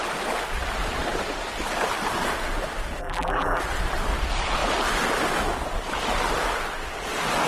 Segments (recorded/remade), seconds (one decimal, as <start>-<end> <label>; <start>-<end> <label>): 0.0-3.0 recorded; 3.0-3.6 remade; 3.6-7.5 recorded